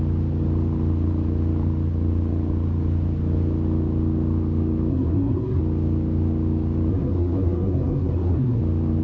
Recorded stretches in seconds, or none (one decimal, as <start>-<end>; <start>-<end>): 0.0-4.9; 5.6-6.9; 8.6-9.0